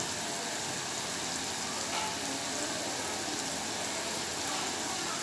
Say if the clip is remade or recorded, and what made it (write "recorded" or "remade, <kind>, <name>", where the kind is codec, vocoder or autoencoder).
recorded